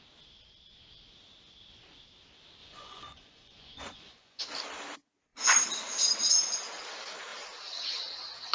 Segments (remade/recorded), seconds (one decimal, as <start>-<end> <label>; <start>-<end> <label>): 0.0-2.6 recorded; 2.6-4.4 remade; 4.4-8.5 recorded